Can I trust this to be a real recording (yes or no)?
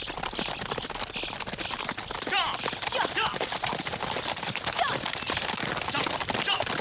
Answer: yes